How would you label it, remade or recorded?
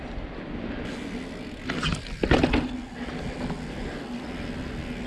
recorded